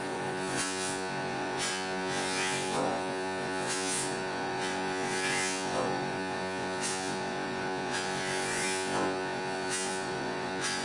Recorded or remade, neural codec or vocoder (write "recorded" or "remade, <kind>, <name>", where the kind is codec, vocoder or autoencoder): remade, vocoder, Vocos